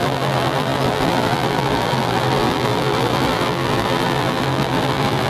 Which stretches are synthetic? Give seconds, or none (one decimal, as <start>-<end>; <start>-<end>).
0.0-5.3